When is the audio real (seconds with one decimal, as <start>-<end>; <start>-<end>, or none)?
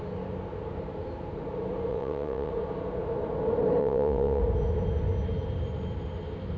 0.0-1.9; 2.5-3.8; 4.4-6.6